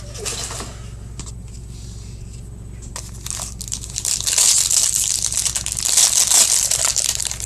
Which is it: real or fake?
real